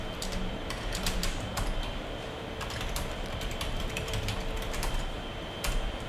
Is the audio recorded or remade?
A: remade